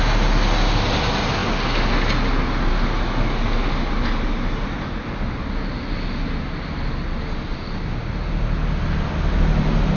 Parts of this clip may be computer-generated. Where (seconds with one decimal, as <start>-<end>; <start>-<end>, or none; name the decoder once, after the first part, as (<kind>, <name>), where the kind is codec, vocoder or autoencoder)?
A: none